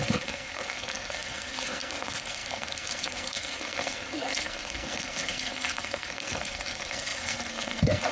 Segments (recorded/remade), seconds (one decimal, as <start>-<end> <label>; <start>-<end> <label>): 0.0-8.1 remade